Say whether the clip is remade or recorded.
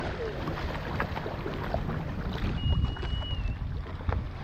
recorded